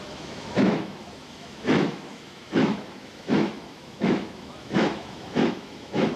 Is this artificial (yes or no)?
yes